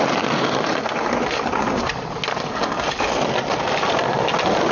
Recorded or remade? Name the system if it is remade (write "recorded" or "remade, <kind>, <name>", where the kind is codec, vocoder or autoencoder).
recorded